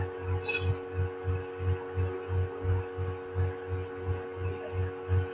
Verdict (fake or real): real